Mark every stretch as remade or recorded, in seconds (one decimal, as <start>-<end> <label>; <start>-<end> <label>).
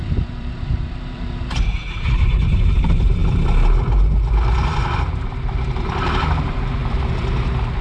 0.0-3.2 remade; 3.2-4.3 recorded; 4.3-6.8 remade; 6.8-7.8 recorded